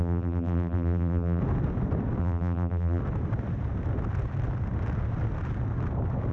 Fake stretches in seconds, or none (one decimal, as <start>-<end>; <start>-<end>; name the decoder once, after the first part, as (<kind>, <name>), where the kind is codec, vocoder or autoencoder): 0.0-1.4 (vocoder, BigVGAN v2); 2.2-3.0